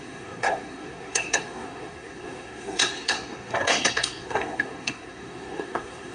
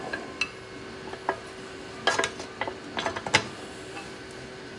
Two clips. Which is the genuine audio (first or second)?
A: second